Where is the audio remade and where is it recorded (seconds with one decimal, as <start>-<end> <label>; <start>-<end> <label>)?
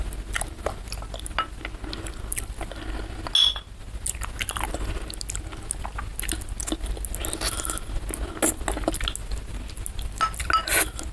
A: 0.0-11.1 recorded